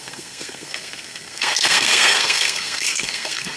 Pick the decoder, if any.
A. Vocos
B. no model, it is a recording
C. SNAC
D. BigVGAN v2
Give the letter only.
C